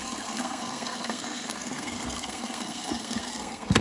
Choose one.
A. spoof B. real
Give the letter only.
A